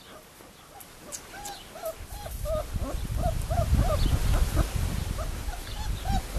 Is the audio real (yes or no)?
yes